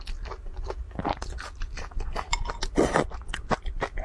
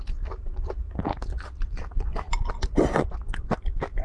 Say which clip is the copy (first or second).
second